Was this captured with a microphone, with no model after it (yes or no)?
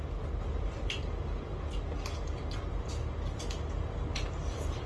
yes